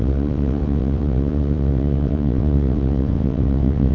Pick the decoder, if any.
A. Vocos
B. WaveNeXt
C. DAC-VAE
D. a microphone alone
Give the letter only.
B